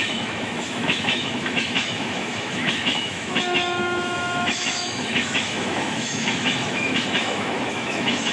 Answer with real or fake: fake